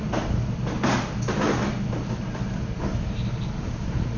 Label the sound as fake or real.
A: real